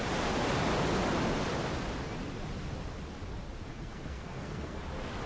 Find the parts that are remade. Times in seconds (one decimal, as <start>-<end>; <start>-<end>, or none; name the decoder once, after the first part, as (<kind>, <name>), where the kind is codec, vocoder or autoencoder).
3.7-4.8 (codec, SNAC)